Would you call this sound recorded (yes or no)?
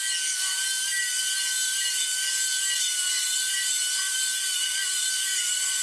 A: yes